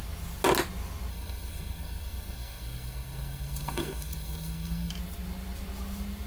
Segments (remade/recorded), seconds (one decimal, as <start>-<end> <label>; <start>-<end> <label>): 0.0-1.1 recorded; 1.1-4.9 remade; 4.9-6.3 recorded